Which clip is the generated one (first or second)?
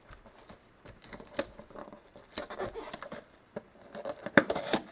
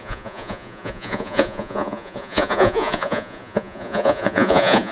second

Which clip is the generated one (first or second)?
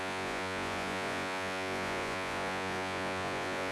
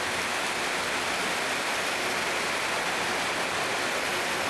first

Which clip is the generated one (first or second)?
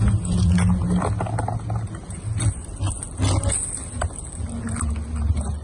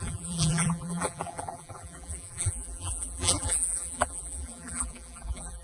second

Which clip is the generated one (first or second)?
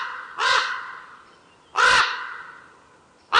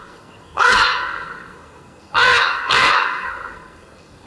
second